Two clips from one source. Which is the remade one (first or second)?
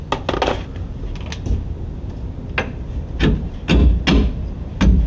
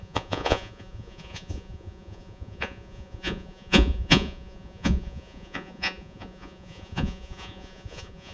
second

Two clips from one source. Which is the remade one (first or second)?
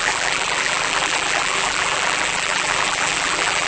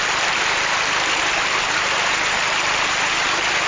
first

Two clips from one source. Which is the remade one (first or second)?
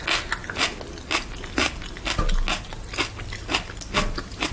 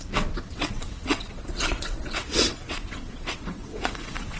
second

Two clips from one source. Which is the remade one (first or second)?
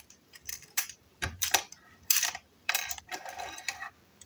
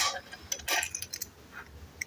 first